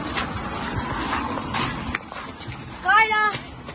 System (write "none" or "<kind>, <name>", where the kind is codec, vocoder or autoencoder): none